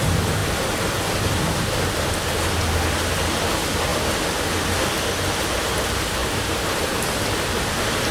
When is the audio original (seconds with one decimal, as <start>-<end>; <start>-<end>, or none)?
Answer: 0.0-6.2; 7.0-8.1